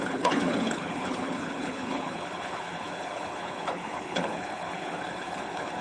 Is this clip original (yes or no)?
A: no